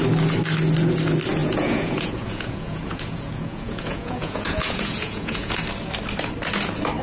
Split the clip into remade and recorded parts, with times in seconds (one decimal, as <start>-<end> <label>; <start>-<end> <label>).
0.0-1.4 recorded; 1.4-5.6 remade; 5.6-7.0 recorded